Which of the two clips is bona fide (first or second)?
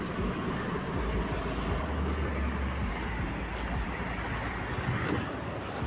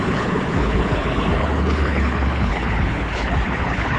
first